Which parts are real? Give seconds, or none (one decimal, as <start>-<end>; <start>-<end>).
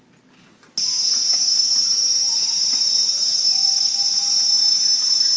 0.0-5.4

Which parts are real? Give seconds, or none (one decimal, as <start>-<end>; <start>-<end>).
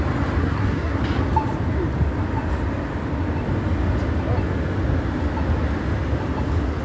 0.0-0.4; 1.0-6.8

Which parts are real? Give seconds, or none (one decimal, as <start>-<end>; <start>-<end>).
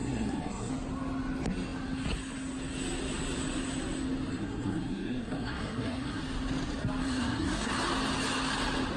0.7-4.3; 6.2-7.0; 7.7-9.0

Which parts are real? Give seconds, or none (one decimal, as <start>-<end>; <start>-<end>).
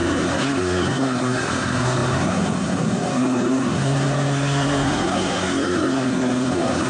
none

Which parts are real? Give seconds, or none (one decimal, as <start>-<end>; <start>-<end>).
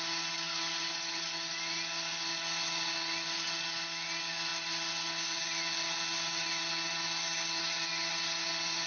0.0-8.9